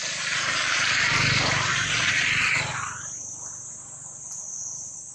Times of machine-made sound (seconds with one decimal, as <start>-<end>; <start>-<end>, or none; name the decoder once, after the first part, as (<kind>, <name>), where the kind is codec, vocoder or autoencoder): 0.0-2.1 (vocoder, BigVGAN v2); 2.7-5.1